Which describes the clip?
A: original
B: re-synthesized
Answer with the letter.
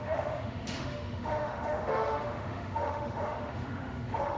B